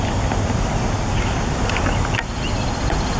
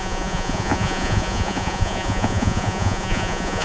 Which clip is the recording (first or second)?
first